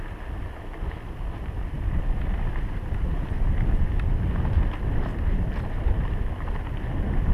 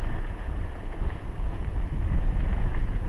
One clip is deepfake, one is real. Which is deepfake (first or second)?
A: second